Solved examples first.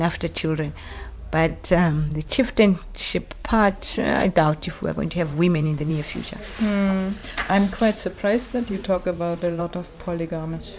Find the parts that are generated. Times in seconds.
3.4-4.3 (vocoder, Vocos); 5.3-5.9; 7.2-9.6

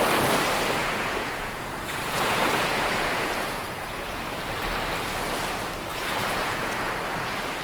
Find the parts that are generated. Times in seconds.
0.8-4.2 (vocoder, Vocos); 5.9-6.9

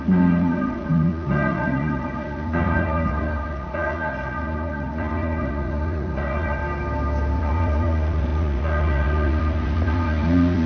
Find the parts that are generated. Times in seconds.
0.0-6.6 (vocoder, Vocos); 7.4-10.7

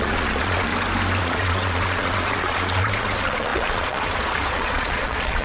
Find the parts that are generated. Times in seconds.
0.0-0.7 (vocoder, Vocos); 1.2-5.4

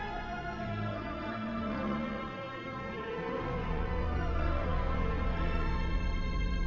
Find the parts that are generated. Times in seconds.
0.0-6.7 (vocoder, Vocos)

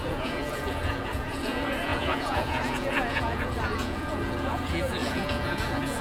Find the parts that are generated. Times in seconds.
0.0-6.0 (vocoder, Vocos)

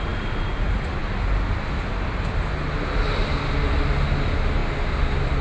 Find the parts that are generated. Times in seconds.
none

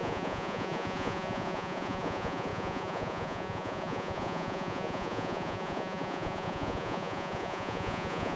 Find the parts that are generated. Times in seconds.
0.0-8.4 (vocoder, Vocos)